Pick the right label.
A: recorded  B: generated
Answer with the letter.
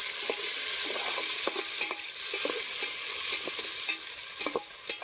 A